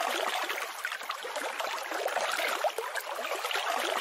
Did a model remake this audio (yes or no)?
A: no